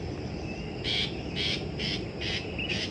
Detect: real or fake real